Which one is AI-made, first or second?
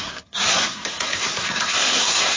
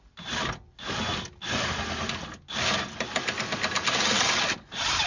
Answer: first